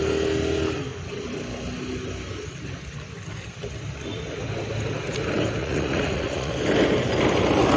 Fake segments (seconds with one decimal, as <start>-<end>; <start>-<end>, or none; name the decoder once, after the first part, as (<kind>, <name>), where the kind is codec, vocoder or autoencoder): 5.6-6.5 (vocoder, Vocos)